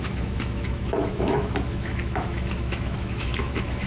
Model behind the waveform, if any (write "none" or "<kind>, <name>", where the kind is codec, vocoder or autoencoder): autoencoder, DAC-VAE